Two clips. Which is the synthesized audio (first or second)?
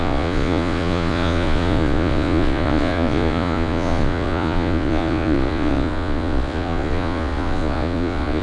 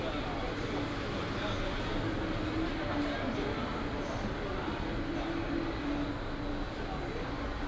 first